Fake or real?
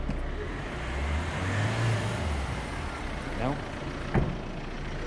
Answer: real